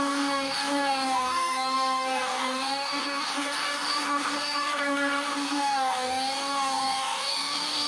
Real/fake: fake